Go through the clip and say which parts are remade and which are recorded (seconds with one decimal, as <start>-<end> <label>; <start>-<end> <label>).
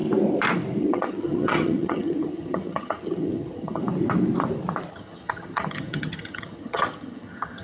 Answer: 0.0-0.8 recorded; 0.8-3.8 remade; 3.8-4.9 recorded; 4.9-7.6 remade